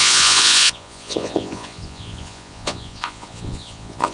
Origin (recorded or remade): remade